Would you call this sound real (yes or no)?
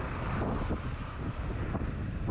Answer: yes